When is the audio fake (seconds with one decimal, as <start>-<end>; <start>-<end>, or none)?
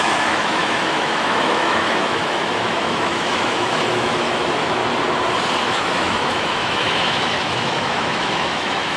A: 0.0-4.8; 5.6-9.0